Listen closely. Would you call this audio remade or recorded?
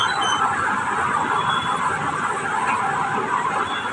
recorded